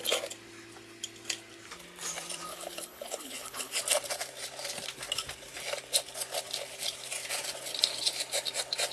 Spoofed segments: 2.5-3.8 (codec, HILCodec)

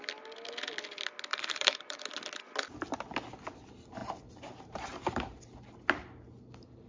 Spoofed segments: 1.3-2.0 (vocoder, BigVGAN v2); 4.0-5.4

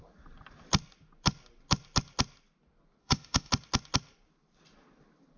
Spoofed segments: 3.0-3.5 (autoencoder, DAC-VAE)

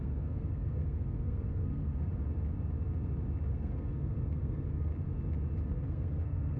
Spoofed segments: 0.0-2.1 (codec, SNAC); 3.5-4.9; 5.7-6.6